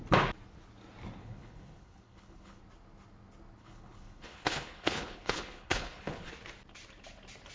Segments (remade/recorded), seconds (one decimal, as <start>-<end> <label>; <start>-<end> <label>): 0.0-1.2 recorded; 1.2-2.6 remade; 2.6-3.6 recorded; 3.6-6.3 remade; 6.3-7.5 recorded